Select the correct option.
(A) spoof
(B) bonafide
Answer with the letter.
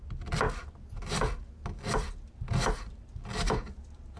B